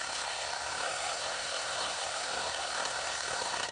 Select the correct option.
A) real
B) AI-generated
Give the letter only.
B